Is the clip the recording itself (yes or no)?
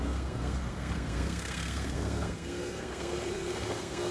no